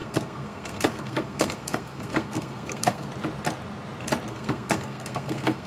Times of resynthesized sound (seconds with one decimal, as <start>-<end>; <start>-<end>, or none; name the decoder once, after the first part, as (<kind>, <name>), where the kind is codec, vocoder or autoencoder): 0.0-3.1 (codec, SNAC); 4.3-5.7